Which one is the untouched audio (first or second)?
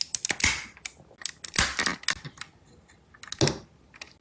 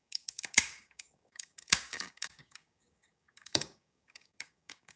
first